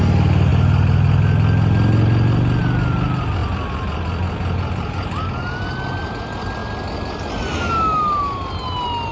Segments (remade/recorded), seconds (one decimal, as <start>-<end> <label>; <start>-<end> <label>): 0.0-9.1 recorded